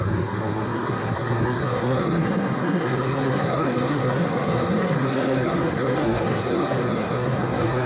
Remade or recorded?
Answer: remade